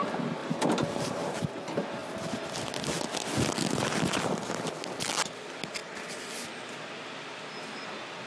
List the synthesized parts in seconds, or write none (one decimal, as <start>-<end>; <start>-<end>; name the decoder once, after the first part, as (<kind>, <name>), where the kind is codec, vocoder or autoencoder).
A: 0.4-1.5 (vocoder, BigVGAN v2)